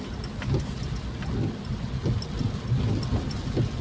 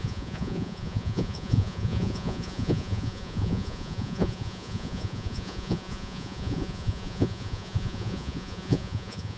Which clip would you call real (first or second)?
first